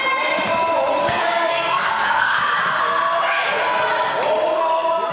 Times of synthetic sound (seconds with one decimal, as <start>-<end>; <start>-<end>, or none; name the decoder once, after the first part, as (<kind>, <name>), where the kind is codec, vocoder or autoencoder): 1.0-2.4 (codec, SNAC)